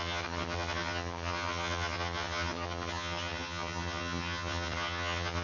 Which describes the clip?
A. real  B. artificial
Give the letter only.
B